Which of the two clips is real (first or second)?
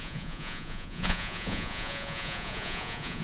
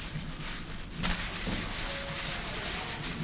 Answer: second